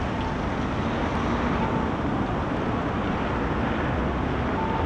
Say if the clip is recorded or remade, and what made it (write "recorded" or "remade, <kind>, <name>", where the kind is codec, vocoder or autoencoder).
recorded